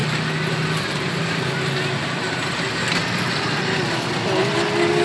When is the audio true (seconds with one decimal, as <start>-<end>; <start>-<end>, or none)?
0.0-5.0